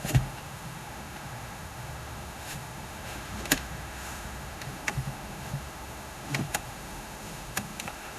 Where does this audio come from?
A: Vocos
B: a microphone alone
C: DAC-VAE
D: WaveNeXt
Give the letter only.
C